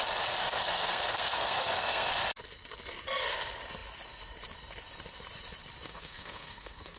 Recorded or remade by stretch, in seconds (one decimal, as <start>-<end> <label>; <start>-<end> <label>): 0.0-0.4 recorded; 0.4-2.1 remade; 2.1-5.9 recorded; 5.9-7.0 remade